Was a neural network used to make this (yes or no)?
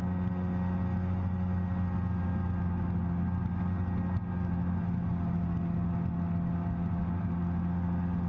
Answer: no